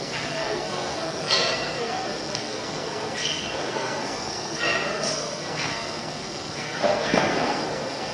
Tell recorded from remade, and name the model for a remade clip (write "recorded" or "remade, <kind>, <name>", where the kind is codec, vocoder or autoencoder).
remade, codec, SNAC